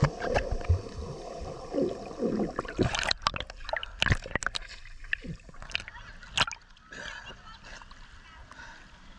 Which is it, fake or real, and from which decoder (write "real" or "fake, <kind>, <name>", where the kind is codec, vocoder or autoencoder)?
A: real